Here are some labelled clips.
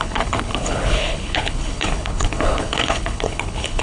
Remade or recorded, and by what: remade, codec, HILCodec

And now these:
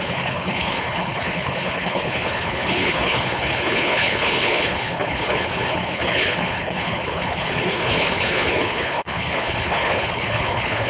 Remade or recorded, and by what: remade, codec, HILCodec